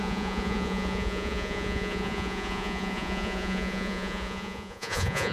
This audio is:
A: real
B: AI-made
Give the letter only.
B